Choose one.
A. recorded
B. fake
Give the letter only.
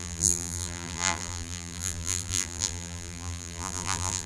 B